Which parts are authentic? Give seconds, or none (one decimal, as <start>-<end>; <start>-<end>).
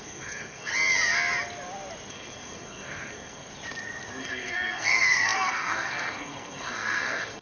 0.7-2.1; 3.5-4.2